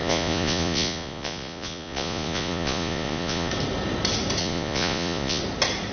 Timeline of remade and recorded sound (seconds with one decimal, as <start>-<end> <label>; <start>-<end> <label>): 0.0-3.5 remade; 3.5-4.4 recorded; 4.4-5.4 remade; 5.4-5.9 recorded